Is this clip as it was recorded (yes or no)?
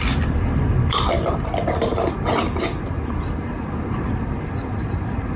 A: yes